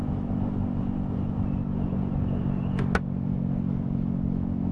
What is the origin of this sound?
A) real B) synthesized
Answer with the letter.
A